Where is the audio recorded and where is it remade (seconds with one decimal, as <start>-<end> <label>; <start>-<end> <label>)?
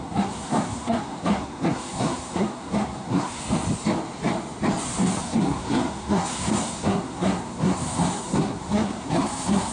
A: 0.0-3.4 remade; 3.4-5.2 recorded; 5.2-9.7 remade